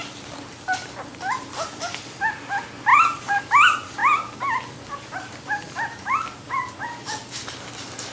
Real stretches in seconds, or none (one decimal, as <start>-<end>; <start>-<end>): 0.0-2.9; 3.4-8.1